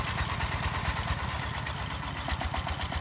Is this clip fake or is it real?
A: real